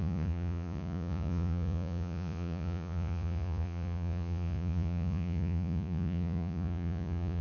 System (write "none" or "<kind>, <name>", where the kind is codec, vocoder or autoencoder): vocoder, Vocos